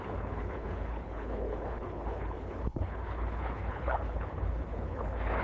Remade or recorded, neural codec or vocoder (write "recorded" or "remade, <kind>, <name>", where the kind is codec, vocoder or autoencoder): remade, codec, HILCodec